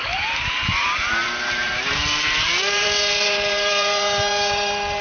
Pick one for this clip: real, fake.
fake